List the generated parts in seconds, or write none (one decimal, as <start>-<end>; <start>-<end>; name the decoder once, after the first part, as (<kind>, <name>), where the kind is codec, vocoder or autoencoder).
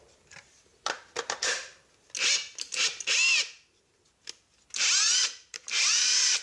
0.0-1.7 (vocoder, BigVGAN v2); 5.2-6.4